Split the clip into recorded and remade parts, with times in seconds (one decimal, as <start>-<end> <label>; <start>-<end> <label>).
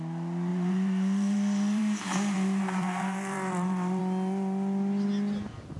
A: 0.0-0.5 recorded; 0.5-4.0 remade; 4.0-5.8 recorded